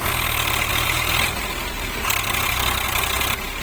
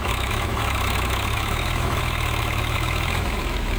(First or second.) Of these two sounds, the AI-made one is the second